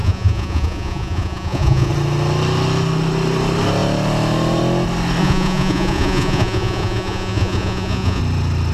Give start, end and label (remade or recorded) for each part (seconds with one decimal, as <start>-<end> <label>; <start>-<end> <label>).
0.0-1.9 remade; 1.9-5.2 recorded; 5.2-8.2 remade; 8.2-8.7 recorded

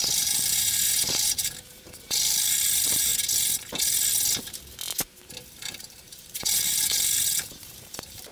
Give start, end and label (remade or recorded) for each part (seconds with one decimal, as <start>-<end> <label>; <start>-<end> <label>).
0.0-3.1 remade; 3.1-5.6 recorded; 5.6-8.3 remade